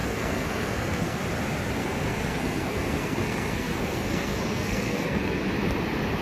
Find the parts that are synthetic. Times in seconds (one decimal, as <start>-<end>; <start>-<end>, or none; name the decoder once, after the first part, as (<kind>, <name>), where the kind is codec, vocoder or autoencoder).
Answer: 0.0-1.2 (codec, SNAC); 1.8-5.4

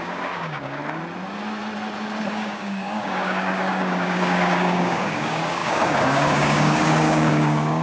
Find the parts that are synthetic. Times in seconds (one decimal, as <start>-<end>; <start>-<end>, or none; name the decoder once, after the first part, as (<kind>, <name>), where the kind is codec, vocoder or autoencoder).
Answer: 0.0-0.8 (codec, DAC); 2.3-7.8

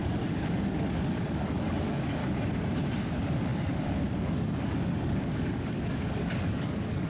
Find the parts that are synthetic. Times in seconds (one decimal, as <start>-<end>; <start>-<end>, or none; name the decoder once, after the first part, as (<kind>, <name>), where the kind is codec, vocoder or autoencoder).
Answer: 0.0-2.2 (codec, DAC); 3.1-7.1

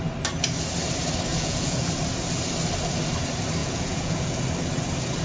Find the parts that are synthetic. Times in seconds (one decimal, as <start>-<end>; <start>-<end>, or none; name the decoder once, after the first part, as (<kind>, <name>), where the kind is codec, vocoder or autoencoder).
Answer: 1.3-1.9 (vocoder, Vocos); 3.6-4.4

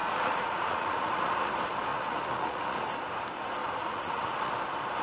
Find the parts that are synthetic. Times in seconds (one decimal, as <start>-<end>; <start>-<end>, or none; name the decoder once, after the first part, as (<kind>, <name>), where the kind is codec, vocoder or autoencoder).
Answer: 0.0-1.5 (vocoder, Vocos); 1.9-2.8; 3.6-4.5

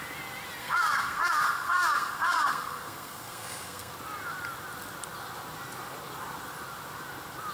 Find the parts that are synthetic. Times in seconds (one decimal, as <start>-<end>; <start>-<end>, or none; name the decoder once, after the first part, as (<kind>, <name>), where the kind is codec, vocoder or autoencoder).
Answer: 0.6-3.9 (codec, SNAC)

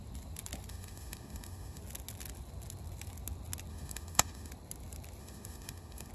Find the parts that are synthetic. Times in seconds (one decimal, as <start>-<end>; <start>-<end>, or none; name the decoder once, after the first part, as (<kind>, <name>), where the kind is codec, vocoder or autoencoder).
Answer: 0.7-1.8 (autoencoder, DAC-VAE); 3.7-4.5; 5.2-6.1